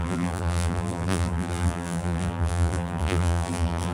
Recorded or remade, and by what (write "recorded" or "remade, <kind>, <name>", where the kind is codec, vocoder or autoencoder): remade, vocoder, BigVGAN v2